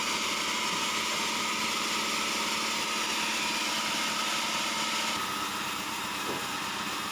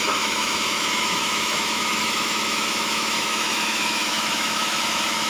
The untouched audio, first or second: first